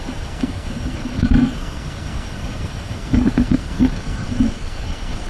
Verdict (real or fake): fake